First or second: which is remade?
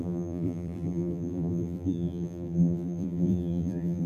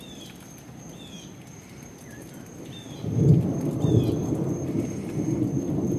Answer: first